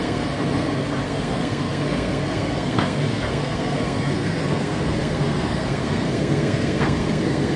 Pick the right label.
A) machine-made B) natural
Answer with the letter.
A